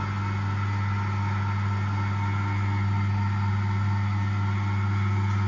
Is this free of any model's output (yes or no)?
yes